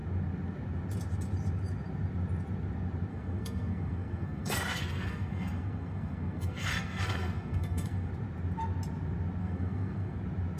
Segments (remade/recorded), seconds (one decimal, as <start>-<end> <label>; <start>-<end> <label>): 0.0-3.1 recorded; 3.1-8.1 remade; 8.1-9.4 recorded; 9.4-10.2 remade; 10.2-10.6 recorded